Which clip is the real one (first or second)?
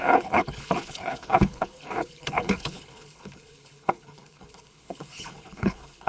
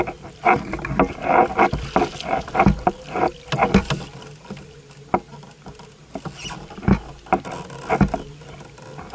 second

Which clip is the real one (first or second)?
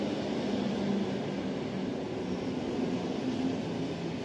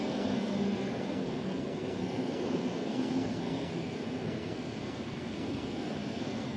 first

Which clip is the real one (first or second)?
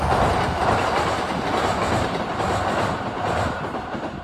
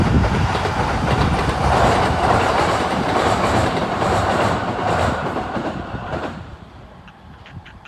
first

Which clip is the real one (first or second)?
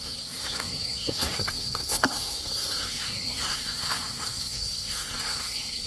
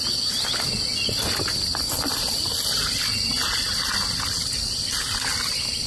second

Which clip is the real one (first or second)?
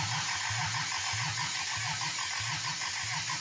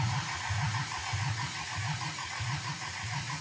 first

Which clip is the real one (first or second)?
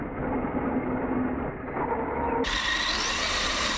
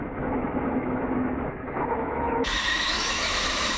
first